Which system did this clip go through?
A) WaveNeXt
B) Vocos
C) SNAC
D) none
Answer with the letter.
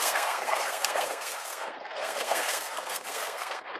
C